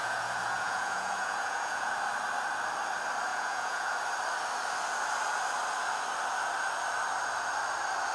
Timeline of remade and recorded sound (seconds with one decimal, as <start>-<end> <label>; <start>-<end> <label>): 0.0-1.9 remade; 1.9-3.3 recorded; 3.3-3.9 remade; 3.9-8.1 recorded